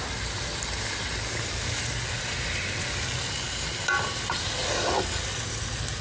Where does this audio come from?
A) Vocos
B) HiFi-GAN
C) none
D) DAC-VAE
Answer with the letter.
C